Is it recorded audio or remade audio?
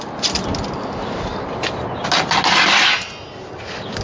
recorded